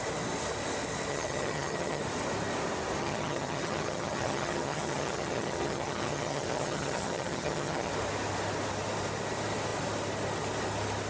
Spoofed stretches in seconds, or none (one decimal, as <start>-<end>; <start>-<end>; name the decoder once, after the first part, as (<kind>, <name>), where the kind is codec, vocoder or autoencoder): 1.1-2.0 (vocoder, HiFi-GAN); 3.0-7.9